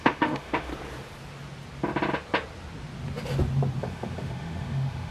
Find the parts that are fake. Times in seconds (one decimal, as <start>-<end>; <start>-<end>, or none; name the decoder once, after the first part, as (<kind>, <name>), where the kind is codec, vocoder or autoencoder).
0.0-0.7 (autoencoder, DAC-VAE); 3.8-5.1